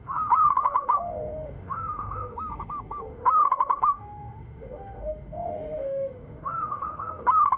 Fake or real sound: fake